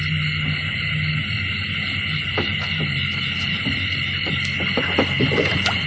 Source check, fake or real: real